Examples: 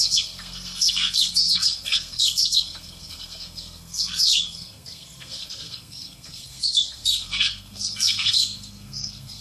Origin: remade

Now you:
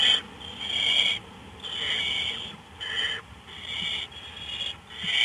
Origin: recorded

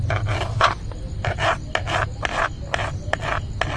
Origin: recorded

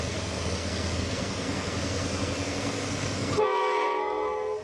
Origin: remade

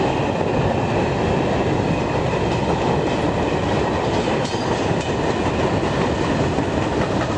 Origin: recorded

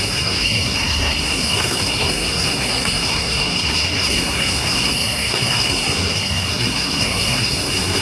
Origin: remade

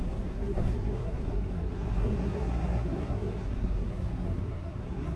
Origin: remade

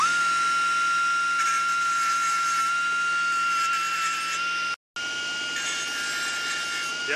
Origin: recorded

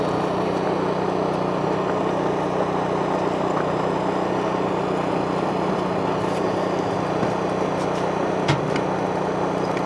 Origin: recorded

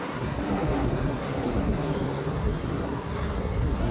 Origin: remade